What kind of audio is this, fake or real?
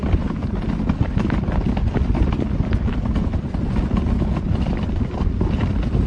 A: real